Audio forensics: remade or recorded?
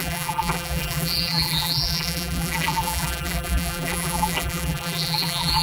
remade